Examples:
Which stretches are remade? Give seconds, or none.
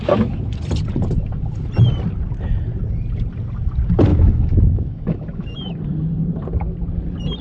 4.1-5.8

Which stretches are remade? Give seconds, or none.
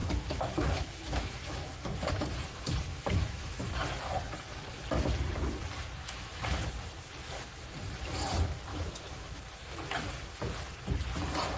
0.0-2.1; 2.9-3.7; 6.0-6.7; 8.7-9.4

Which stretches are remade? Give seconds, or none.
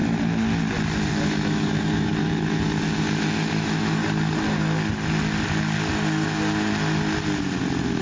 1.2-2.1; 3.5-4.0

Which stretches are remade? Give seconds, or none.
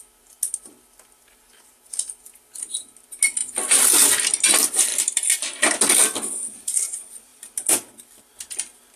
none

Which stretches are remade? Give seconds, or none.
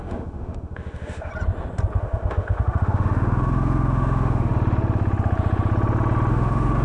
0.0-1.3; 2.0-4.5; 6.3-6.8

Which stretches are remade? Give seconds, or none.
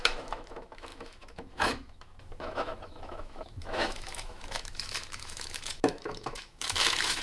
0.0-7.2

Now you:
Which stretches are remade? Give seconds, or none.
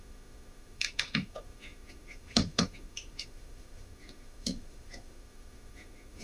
0.0-6.2